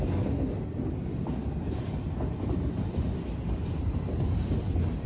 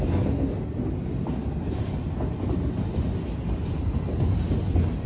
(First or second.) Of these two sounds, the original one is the second